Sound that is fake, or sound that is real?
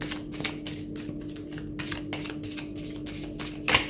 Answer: real